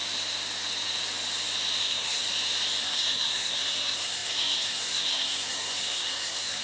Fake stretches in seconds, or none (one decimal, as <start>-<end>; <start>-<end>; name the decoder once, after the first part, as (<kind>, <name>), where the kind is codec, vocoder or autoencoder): 1.8-2.2 (codec, SNAC); 2.8-6.6